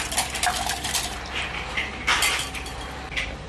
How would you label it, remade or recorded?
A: remade